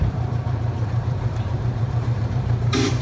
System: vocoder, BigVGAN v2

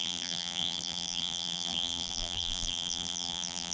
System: vocoder, BigVGAN v2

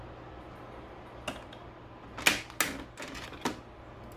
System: none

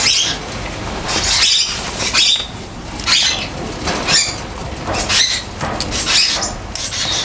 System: none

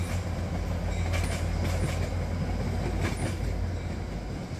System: none